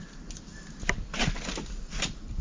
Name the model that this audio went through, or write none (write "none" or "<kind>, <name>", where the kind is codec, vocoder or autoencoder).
none